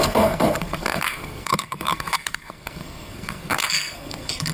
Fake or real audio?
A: fake